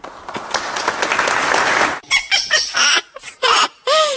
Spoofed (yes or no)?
no